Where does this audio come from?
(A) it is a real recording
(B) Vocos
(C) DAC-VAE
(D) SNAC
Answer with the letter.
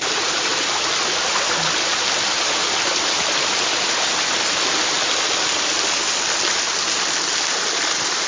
A